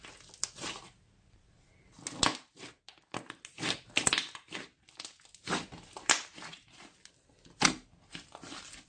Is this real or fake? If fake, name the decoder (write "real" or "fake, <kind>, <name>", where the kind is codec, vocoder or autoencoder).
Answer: real